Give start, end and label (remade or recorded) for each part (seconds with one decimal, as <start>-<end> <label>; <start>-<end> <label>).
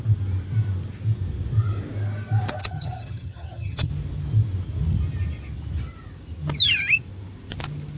0.0-2.6 recorded; 2.6-3.9 remade; 3.9-8.0 recorded